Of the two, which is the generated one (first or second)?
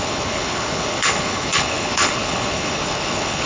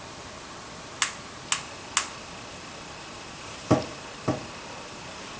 first